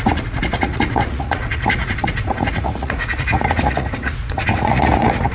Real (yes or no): no